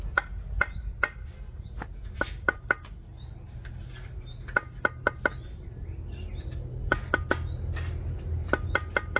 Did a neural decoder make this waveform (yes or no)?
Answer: no